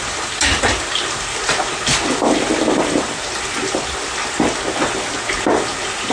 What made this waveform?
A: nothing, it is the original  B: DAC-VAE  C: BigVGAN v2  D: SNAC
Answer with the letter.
A